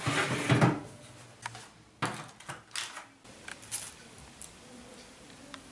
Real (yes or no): yes